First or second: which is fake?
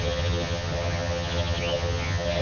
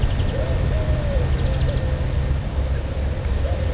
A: first